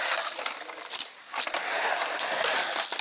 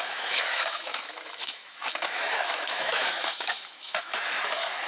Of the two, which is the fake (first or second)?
second